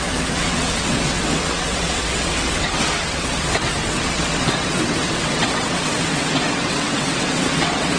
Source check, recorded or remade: remade